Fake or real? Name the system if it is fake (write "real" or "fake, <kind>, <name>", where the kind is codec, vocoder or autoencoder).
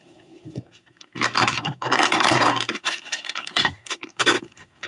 fake, codec, SNAC